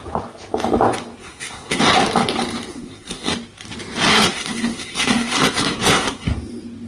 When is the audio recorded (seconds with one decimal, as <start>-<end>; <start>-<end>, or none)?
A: 0.0-1.2; 1.8-2.7; 3.3-4.1; 6.3-6.9